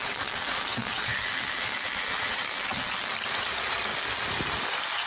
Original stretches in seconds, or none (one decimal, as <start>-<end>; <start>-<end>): 3.1-5.1